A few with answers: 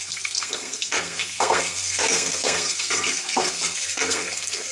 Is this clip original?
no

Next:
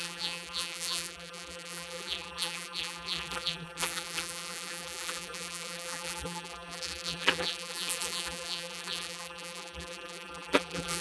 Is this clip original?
no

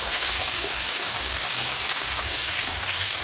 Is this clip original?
no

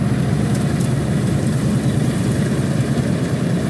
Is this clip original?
yes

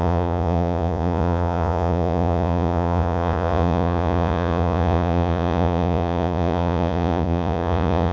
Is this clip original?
no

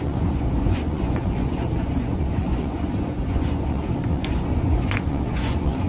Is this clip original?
no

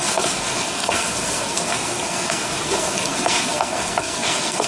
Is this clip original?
no